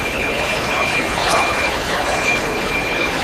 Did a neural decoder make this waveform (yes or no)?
yes